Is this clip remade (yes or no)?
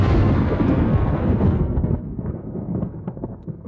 yes